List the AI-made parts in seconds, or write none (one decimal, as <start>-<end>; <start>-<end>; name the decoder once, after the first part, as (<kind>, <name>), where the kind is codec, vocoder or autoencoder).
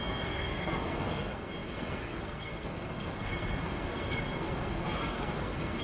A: 0.0-5.8 (codec, SNAC)